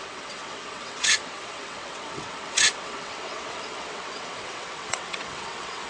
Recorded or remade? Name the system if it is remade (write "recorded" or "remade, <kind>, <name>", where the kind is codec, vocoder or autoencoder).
remade, vocoder, WaveNeXt